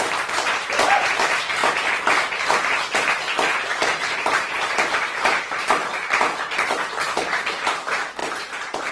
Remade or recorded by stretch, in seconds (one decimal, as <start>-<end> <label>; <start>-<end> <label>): 0.0-1.6 remade; 1.6-3.5 recorded; 3.5-5.8 remade; 5.8-6.8 recorded; 6.8-8.9 remade